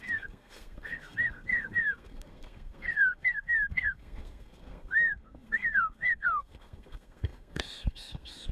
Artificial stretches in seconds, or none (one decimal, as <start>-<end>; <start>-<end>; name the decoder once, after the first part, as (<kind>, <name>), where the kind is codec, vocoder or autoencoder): 0.0-8.5 (codec, SNAC)